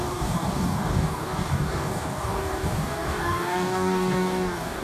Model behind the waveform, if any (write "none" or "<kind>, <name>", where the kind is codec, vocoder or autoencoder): codec, DAC